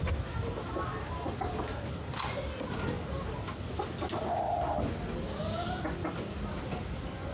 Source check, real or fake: real